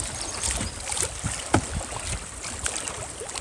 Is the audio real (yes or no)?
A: no